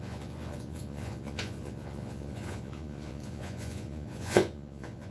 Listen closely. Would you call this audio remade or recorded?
remade